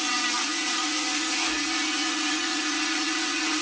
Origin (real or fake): fake